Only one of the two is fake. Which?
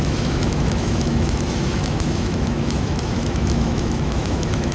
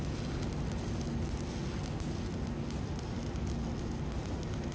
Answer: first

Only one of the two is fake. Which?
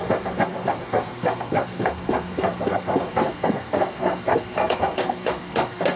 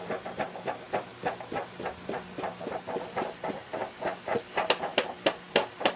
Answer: first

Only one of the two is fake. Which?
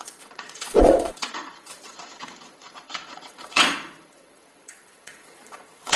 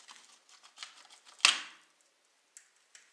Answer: first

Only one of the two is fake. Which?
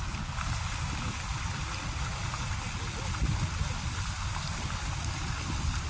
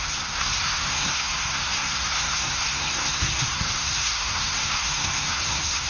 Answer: second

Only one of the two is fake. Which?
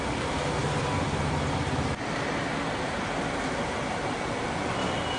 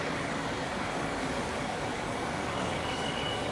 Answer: second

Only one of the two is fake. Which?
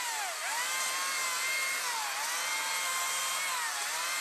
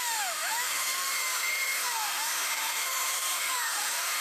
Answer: second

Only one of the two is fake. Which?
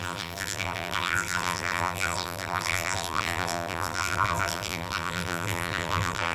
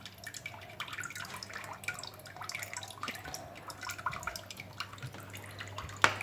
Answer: first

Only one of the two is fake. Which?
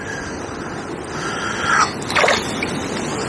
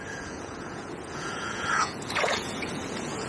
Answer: second